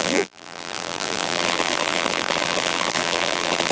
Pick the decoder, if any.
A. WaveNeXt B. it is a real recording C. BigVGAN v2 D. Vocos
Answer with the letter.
C